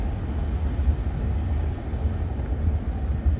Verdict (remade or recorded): recorded